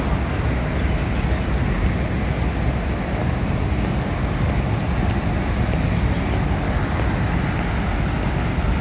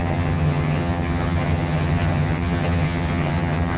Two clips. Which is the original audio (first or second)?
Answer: first